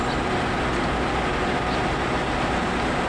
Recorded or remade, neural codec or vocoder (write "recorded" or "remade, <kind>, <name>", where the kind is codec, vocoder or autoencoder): recorded